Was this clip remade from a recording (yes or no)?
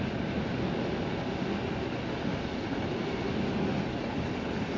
no